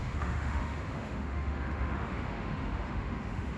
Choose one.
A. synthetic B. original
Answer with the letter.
A